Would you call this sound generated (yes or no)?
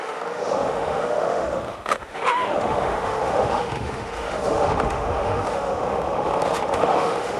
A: yes